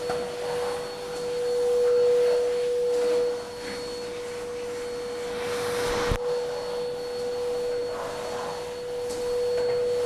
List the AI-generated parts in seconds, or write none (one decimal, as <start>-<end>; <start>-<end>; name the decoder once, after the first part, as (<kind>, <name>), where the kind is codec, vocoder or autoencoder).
none